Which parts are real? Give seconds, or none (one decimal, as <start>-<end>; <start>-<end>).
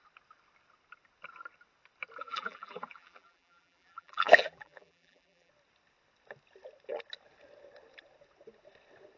0.0-2.2; 5.5-9.2